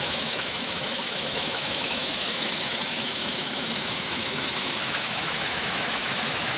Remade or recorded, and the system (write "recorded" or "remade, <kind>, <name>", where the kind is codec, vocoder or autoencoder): remade, autoencoder, DAC-VAE